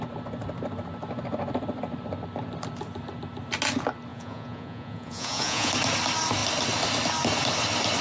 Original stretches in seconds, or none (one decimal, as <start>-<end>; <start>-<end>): 0.0-4.1; 5.7-8.0